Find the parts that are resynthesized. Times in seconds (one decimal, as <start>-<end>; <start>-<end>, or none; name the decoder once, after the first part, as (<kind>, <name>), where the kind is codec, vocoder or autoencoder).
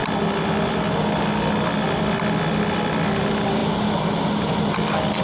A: none